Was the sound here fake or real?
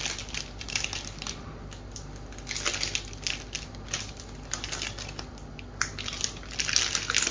real